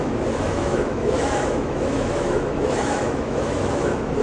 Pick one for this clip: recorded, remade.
remade